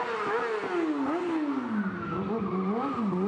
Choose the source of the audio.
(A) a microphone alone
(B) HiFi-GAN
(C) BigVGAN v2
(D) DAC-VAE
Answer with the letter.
A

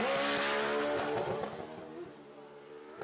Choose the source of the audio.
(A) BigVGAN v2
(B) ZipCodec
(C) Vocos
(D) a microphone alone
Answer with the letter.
D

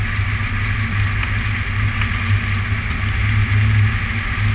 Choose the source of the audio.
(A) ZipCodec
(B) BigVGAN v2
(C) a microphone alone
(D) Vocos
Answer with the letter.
C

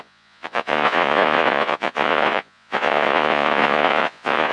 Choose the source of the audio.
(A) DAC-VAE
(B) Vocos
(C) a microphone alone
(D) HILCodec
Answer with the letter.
B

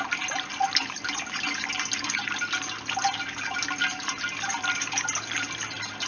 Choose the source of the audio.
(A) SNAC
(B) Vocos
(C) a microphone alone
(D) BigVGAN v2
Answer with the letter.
C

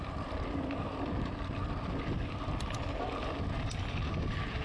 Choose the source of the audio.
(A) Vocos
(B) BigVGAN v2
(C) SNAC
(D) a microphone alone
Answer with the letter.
D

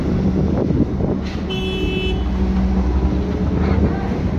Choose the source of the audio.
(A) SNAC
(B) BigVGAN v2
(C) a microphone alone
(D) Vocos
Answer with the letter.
C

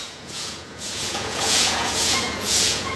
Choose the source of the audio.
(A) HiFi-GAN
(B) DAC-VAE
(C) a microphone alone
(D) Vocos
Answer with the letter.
D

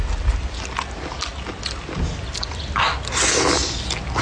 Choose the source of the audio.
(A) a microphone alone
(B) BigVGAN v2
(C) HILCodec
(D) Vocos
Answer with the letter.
A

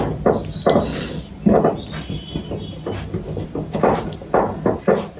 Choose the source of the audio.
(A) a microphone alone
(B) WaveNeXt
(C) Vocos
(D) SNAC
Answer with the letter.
A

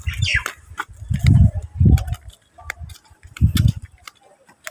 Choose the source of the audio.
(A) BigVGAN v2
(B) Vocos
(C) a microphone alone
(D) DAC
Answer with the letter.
C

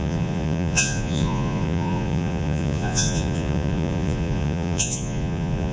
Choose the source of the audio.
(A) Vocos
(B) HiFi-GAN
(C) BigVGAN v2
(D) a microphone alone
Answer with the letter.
A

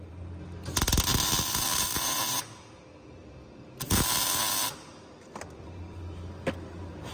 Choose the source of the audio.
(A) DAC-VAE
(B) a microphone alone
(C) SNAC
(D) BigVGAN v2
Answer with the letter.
B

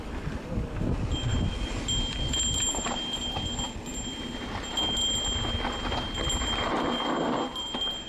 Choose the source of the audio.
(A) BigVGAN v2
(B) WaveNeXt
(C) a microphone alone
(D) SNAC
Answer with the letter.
C